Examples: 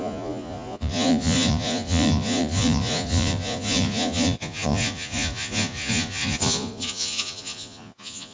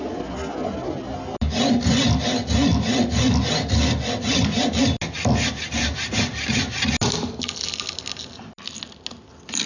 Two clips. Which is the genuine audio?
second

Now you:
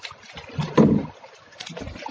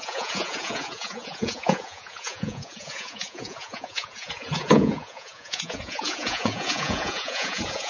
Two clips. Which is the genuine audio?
first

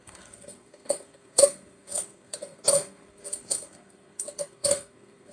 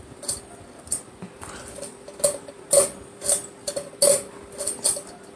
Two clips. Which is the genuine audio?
second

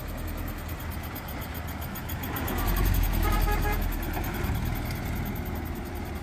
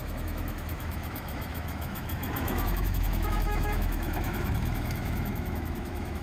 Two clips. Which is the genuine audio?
first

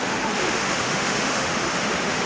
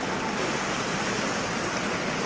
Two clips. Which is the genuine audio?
second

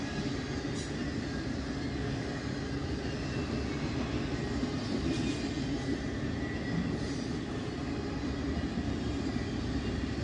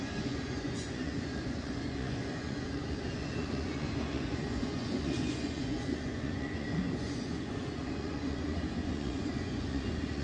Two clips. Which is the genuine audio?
first